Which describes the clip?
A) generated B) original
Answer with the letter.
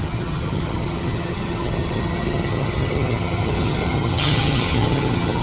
A